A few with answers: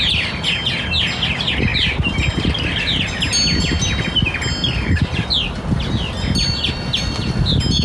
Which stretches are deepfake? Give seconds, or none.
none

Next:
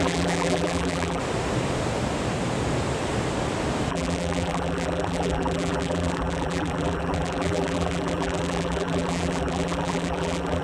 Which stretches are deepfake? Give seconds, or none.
0.0-1.2 (vocoder, BigVGAN v2); 3.9-10.6

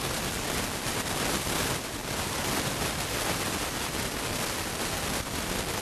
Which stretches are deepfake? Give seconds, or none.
2.0-4.0 (vocoder, BigVGAN v2)

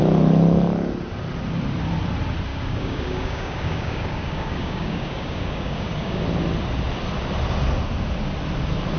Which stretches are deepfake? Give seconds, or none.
2.5-6.2 (codec, DAC)

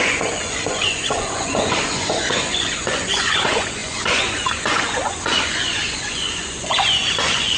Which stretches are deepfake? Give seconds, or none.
0.0-7.6 (vocoder, Vocos)